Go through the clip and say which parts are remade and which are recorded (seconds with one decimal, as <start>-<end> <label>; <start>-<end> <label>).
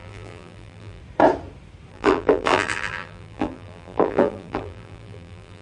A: 0.0-1.0 remade; 1.0-1.9 recorded; 1.9-5.6 remade